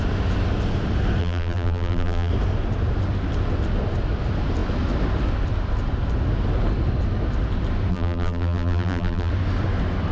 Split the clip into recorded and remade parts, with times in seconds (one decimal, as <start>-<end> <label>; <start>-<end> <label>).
0.0-1.2 recorded; 1.2-2.3 remade; 2.3-7.9 recorded; 7.9-9.3 remade; 9.3-10.1 recorded